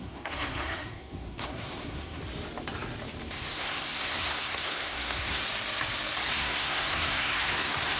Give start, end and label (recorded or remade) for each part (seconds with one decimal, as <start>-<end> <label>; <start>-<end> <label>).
0.0-2.2 remade; 2.2-3.3 recorded; 3.3-5.4 remade; 5.4-6.3 recorded; 6.3-8.0 remade

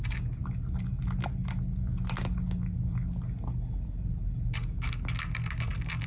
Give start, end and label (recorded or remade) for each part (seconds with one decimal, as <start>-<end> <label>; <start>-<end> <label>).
0.0-6.1 recorded

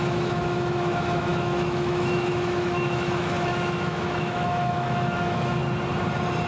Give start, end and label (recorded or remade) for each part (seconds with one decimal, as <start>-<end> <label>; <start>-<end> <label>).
0.0-5.6 remade; 5.6-6.5 recorded

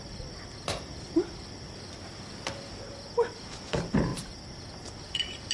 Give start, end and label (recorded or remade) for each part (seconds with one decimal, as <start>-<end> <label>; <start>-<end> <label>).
0.0-4.1 recorded; 4.1-5.5 remade

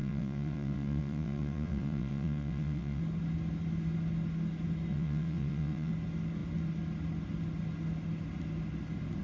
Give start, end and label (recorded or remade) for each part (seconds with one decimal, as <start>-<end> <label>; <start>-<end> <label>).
0.0-3.0 remade; 3.0-4.9 recorded; 4.9-5.9 remade; 5.9-9.2 recorded

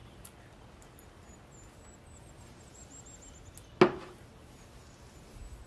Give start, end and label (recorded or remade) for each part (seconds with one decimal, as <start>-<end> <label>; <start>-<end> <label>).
0.0-5.7 recorded

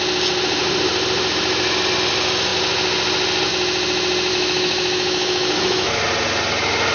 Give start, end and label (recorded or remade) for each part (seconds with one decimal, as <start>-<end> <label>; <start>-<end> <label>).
0.0-4.3 recorded; 4.3-6.0 remade; 6.0-6.9 recorded